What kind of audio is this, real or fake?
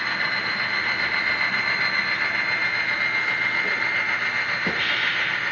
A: real